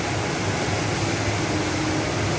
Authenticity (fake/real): real